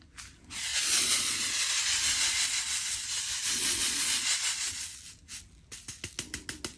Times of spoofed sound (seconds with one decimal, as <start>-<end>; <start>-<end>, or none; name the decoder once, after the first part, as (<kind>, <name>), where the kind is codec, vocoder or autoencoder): 0.7-4.8 (vocoder, Vocos)